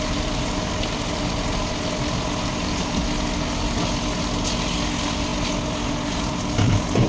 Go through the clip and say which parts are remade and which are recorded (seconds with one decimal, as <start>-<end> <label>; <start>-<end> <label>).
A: 0.0-7.1 recorded